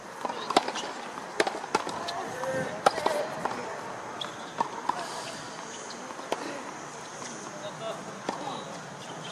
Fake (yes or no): no